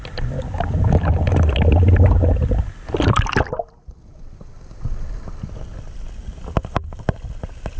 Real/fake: real